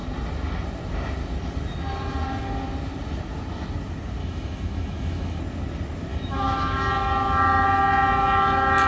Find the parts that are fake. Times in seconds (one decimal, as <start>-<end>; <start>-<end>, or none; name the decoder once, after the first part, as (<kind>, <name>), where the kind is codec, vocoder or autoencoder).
4.2-5.4 (autoencoder, DAC-VAE); 6.1-6.8